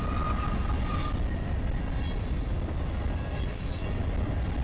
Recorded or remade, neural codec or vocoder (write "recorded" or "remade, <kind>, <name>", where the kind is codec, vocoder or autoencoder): recorded